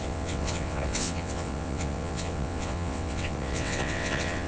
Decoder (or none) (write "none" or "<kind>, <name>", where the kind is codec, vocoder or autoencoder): vocoder, WaveNeXt